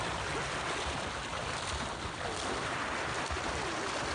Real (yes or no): no